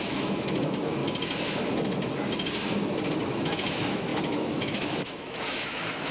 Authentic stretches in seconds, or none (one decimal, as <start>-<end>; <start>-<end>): 1.0-3.3